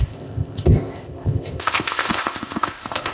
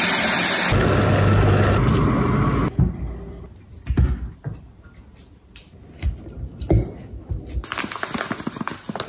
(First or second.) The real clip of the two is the second